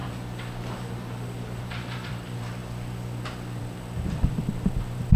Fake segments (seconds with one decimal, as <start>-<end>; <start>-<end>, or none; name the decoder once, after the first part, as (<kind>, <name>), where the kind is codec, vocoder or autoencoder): 1.6-2.6 (vocoder, BigVGAN v2); 3.6-5.2